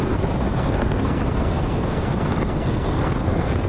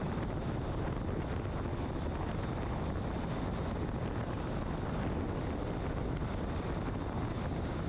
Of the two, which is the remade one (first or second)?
first